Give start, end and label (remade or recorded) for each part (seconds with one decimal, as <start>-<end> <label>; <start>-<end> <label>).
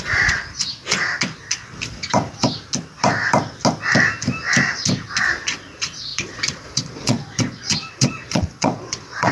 0.0-0.4 remade; 0.4-5.2 recorded; 5.2-9.3 remade